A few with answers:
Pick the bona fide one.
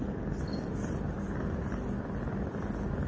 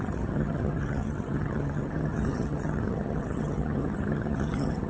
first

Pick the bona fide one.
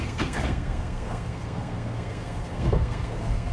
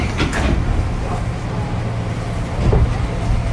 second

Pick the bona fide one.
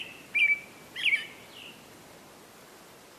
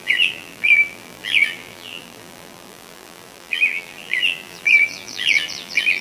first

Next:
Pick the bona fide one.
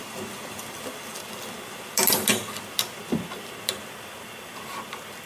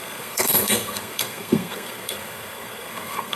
first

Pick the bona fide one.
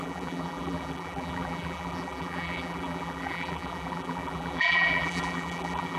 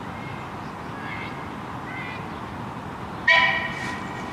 second